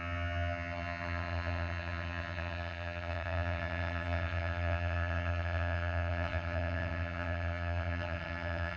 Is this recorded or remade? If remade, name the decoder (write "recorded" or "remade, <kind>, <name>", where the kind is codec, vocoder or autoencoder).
remade, vocoder, HiFi-GAN